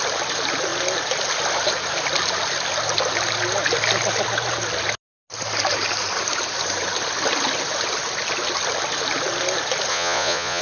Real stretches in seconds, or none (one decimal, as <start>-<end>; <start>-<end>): 0.0-9.9